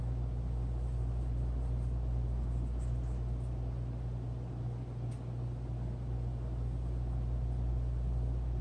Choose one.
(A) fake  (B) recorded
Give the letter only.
B